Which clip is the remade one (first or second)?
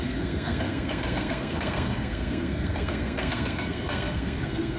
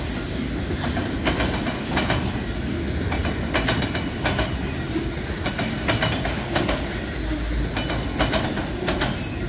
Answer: first